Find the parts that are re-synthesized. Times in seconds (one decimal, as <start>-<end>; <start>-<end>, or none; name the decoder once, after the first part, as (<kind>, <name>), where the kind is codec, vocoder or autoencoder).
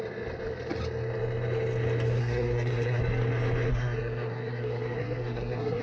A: 2.2-3.0 (codec, SNAC); 3.7-5.8